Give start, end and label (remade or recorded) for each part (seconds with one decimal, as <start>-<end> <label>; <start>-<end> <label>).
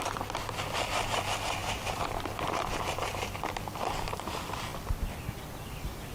0.0-1.6 recorded; 1.6-3.6 remade; 3.6-6.1 recorded